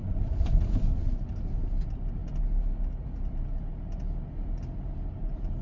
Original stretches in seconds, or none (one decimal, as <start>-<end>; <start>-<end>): 0.0-0.7; 2.2-5.1